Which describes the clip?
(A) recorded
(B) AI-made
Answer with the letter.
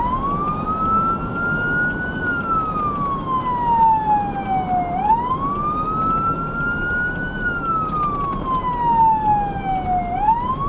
A